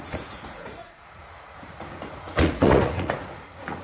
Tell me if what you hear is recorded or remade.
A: remade